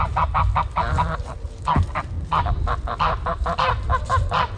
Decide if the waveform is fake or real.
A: real